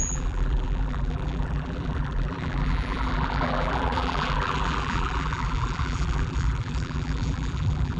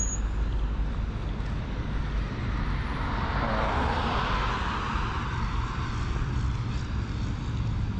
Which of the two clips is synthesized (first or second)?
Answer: first